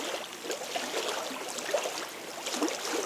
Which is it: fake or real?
real